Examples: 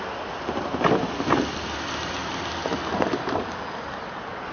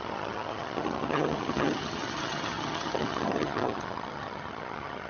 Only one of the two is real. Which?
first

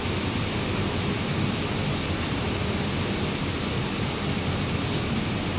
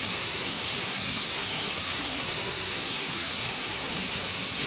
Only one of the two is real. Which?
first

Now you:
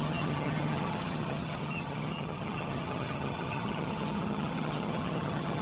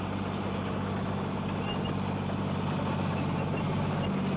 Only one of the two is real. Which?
second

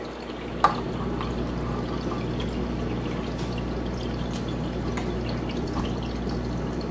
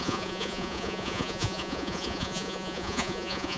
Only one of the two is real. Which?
first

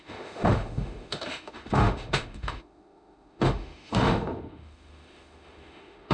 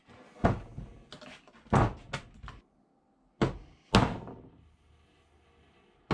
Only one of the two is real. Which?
second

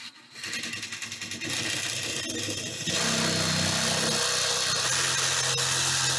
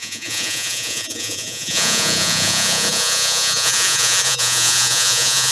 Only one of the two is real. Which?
first